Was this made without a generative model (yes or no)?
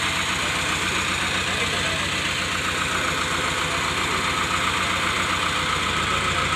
yes